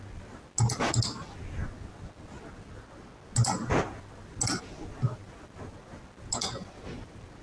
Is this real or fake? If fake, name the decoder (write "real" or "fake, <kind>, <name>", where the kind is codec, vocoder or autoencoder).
real